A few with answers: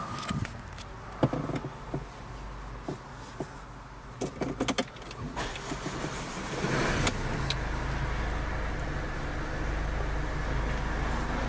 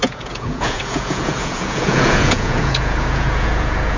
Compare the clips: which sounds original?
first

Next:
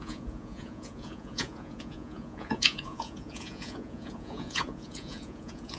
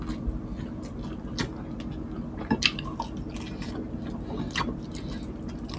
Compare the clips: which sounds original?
second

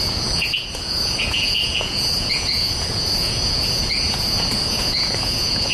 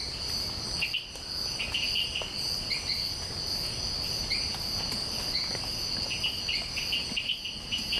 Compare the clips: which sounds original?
second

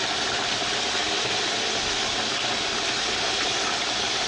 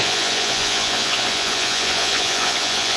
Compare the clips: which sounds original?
first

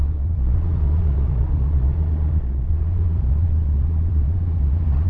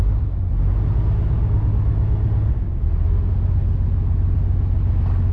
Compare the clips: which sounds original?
second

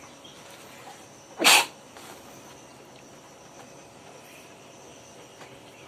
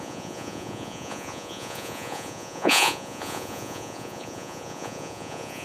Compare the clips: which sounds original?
first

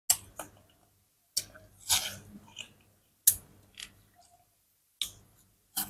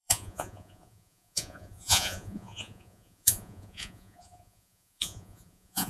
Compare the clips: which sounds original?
first